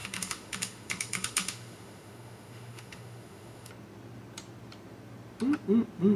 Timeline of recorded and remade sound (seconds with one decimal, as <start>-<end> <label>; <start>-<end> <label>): 0.0-3.7 remade; 3.7-6.2 recorded